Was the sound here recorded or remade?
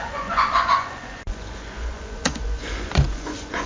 remade